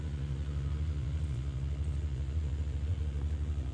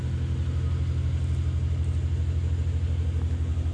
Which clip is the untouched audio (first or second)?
second